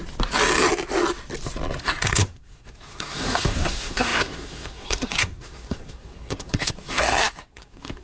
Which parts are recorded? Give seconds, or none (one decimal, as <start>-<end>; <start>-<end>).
0.0-1.8